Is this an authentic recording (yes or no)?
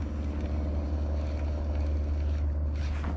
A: yes